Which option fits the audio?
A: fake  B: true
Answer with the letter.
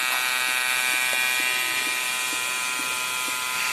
B